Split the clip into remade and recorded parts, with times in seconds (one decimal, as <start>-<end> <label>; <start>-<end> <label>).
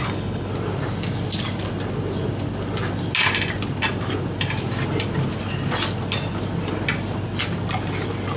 0.0-0.5 remade; 0.5-8.4 recorded